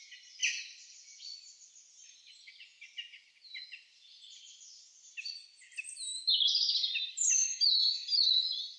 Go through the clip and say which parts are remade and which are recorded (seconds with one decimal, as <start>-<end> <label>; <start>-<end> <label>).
0.0-8.8 recorded